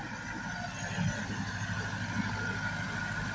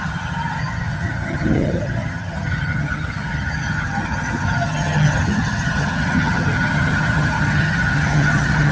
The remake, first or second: second